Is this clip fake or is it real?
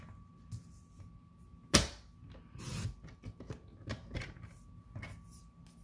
real